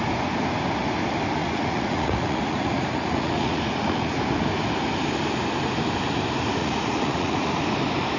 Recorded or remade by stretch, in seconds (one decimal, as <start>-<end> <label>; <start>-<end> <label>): 0.0-1.4 recorded; 1.4-4.2 remade; 4.2-6.6 recorded; 6.6-7.6 remade; 7.6-8.2 recorded